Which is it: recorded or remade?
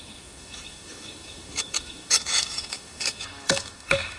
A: remade